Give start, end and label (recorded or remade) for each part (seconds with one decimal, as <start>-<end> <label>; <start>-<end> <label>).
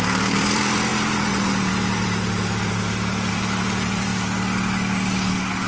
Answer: 0.0-4.1 remade; 4.1-5.3 recorded; 5.3-5.7 remade